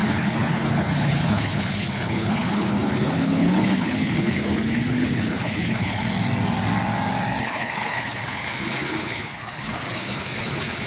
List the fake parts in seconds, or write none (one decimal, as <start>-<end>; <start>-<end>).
0.0-6.0; 7.4-10.9

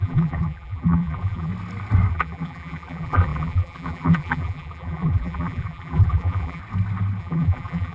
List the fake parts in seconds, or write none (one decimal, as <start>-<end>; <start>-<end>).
0.0-1.5; 2.1-6.6; 7.2-7.9

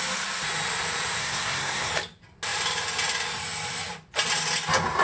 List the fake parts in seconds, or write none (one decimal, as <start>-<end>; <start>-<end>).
1.2-1.9